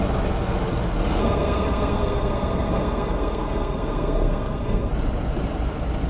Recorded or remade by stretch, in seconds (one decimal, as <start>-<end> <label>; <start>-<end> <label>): 0.0-1.2 recorded; 1.2-4.9 remade; 4.9-6.1 recorded